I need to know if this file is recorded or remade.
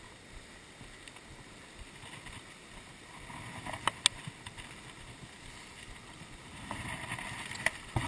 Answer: recorded